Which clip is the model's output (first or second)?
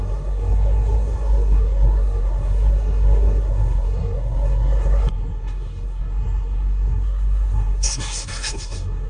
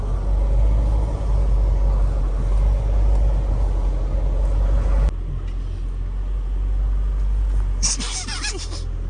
first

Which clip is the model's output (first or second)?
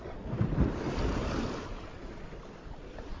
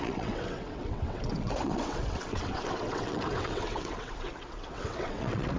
second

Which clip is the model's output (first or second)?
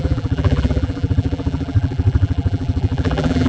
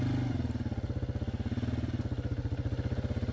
first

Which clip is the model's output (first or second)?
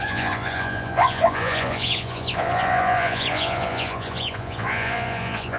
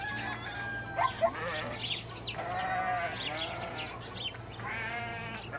first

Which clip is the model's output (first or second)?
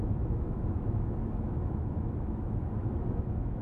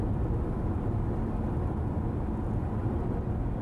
first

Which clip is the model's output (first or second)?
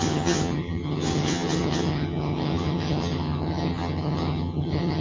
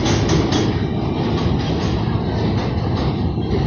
first